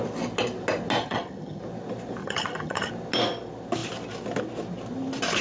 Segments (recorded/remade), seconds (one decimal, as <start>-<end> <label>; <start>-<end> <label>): 0.0-1.0 recorded; 1.0-1.6 remade; 1.6-2.2 recorded; 2.2-2.9 remade; 2.9-5.4 recorded